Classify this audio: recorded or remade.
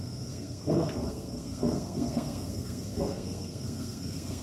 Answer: remade